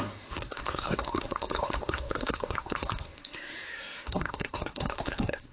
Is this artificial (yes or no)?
yes